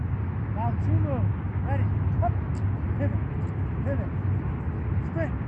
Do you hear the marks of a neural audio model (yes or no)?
no